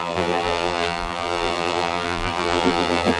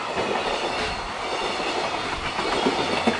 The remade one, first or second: first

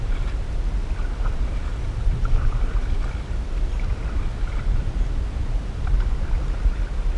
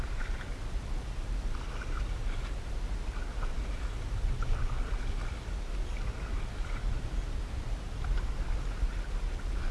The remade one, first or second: first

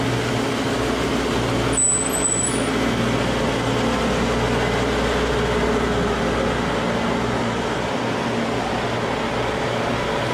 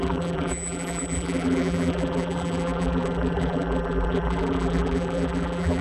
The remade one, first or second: second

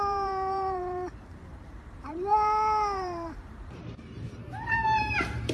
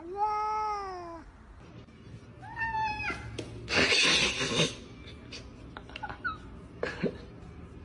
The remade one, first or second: first